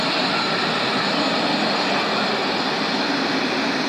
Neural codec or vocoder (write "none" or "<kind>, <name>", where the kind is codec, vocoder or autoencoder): none